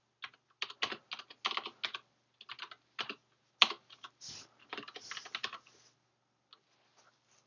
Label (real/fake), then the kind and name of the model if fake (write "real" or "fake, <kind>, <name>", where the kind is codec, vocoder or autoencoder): real